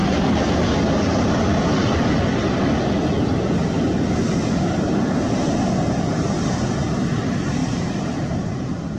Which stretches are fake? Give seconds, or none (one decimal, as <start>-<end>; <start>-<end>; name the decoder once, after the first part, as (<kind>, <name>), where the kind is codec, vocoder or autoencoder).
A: 0.0-0.6 (vocoder, BigVGAN v2); 7.6-9.0

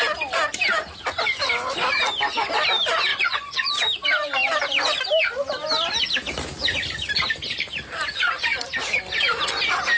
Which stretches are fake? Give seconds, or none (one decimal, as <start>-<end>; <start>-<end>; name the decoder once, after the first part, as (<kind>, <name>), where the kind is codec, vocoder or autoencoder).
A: 3.1-3.7 (vocoder, Vocos)

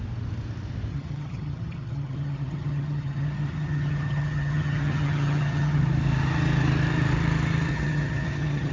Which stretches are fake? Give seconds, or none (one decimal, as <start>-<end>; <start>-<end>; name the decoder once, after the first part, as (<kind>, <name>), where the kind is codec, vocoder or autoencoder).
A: 0.9-5.8 (vocoder, HiFi-GAN); 7.7-8.7